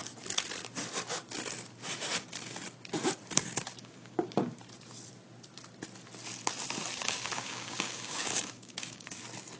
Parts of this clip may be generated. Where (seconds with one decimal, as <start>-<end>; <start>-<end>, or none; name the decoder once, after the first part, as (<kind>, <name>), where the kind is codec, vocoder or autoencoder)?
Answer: 3.8-4.6 (codec, DAC); 7.0-9.2